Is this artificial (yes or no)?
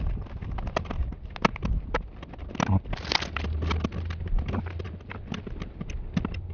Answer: no